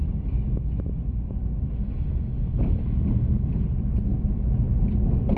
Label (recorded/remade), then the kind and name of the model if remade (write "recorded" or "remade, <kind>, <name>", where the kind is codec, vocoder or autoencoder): recorded